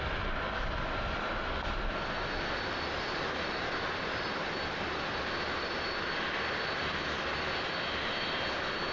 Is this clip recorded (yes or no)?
yes